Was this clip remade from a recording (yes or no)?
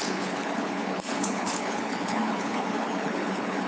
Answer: yes